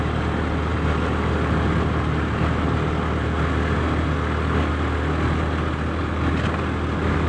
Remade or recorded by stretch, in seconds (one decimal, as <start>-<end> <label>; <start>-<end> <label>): 0.0-7.3 recorded